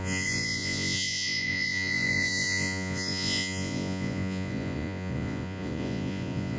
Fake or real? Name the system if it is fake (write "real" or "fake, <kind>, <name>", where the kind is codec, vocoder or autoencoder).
fake, vocoder, Vocos